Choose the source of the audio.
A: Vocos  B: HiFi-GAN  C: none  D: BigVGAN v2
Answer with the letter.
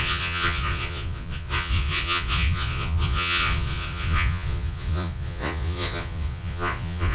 A